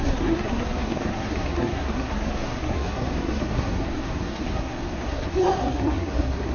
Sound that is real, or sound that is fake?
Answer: fake